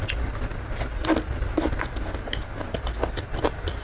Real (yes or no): yes